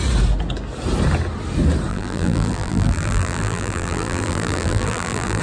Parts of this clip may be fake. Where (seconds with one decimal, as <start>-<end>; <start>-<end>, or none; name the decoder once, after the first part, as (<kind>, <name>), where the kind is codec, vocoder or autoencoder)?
1.9-5.4 (vocoder, BigVGAN v2)